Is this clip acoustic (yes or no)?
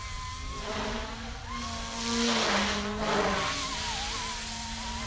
yes